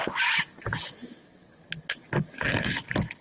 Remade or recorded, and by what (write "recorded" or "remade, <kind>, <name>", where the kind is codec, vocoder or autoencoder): recorded